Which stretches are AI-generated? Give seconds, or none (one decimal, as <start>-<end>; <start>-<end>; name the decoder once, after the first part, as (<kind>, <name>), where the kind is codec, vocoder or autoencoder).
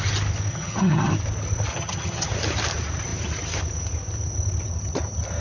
0.5-1.1 (vocoder, HiFi-GAN); 1.7-2.3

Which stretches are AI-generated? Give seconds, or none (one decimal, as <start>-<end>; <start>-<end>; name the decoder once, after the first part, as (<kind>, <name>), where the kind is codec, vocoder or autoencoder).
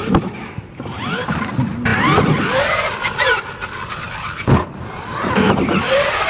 none